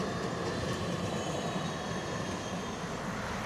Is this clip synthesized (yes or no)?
yes